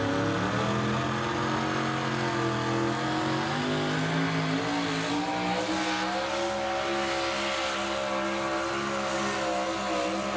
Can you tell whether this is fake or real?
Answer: real